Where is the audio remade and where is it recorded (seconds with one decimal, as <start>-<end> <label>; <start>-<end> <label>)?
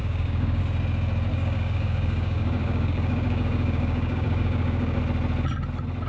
0.0-0.6 remade; 0.6-1.3 recorded; 1.3-5.0 remade; 5.0-6.1 recorded